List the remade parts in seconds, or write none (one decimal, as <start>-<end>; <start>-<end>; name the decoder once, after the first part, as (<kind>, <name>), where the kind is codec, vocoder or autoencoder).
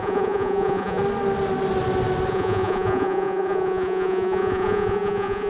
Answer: 0.0-1.0 (vocoder, Vocos); 2.3-5.5